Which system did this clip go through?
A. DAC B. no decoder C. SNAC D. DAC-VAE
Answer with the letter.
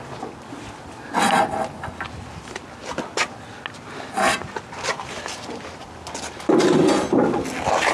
B